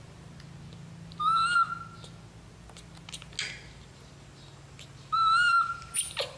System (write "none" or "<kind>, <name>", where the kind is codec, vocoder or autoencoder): none